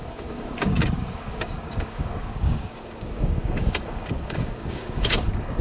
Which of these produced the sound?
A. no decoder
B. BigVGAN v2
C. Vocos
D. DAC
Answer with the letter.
D